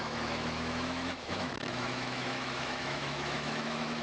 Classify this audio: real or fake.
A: fake